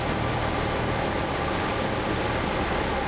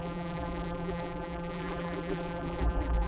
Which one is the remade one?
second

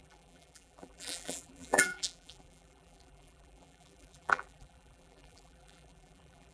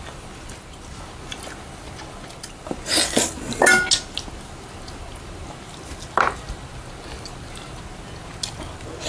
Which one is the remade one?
first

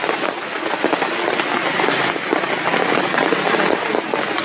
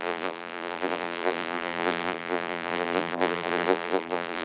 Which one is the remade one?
second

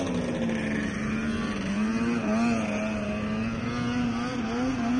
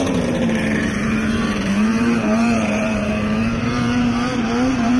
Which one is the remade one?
second